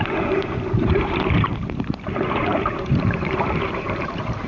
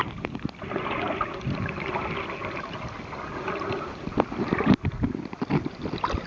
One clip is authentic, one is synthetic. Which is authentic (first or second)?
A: second